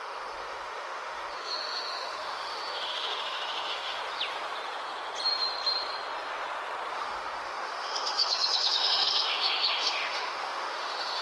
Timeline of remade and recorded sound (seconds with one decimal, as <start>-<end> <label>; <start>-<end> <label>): 0.0-4.0 remade; 4.0-6.9 recorded; 6.9-11.2 remade